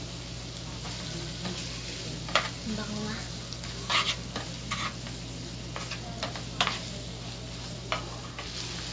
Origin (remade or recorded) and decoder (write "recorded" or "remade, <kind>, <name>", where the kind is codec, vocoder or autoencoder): recorded